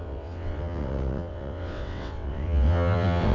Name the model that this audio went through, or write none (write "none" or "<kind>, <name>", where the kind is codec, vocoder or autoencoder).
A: vocoder, WaveNeXt